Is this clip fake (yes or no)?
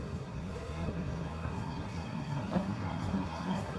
yes